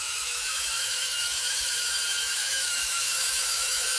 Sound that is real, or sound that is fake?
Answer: fake